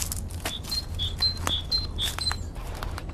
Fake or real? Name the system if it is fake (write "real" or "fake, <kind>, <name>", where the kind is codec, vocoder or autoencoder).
real